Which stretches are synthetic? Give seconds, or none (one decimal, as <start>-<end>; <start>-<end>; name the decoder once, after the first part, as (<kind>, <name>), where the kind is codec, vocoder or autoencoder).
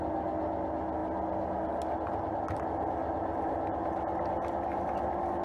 none